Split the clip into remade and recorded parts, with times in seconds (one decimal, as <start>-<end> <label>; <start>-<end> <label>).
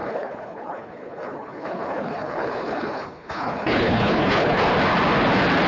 0.0-4.6 remade; 4.6-5.7 recorded